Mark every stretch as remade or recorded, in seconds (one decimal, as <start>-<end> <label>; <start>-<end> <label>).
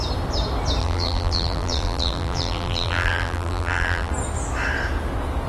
0.0-0.8 recorded; 0.8-4.1 remade; 4.1-5.5 recorded